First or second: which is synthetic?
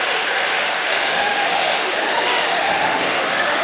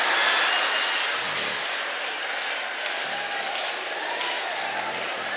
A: first